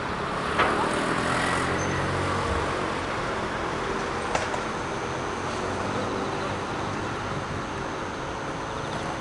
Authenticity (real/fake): real